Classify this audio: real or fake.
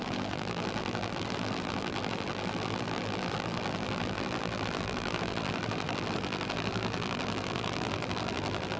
fake